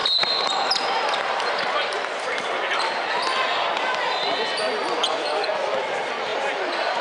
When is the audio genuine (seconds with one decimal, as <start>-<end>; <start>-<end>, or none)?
2.3-7.0